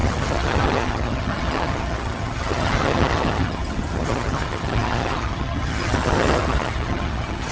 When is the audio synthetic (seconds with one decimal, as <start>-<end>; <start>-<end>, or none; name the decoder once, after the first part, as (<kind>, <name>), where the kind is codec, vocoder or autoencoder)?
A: 0.0-7.5 (vocoder, HiFi-GAN)

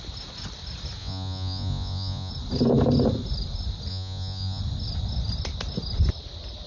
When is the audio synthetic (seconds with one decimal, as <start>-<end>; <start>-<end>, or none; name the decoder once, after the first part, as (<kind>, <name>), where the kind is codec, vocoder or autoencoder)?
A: 1.0-2.3 (vocoder, Vocos); 3.9-4.6

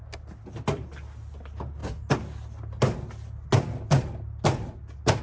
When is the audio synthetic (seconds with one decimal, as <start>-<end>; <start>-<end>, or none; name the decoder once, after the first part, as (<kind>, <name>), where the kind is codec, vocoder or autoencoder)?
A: none

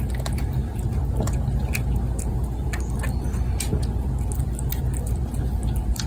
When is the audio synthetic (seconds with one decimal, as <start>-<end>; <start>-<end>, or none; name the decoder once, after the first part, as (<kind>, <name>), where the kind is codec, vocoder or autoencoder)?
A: none

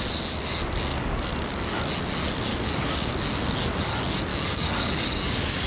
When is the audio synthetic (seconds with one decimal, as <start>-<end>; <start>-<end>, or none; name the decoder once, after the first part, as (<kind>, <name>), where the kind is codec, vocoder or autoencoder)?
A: 0.9-1.8 (codec, DAC); 2.5-3.1; 4.3-5.7

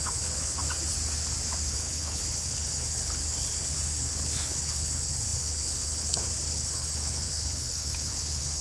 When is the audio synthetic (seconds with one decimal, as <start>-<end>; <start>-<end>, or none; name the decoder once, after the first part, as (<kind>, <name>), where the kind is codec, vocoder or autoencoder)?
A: 0.0-0.6 (codec, HILCodec); 1.7-8.6